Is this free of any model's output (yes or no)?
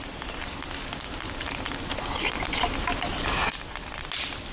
yes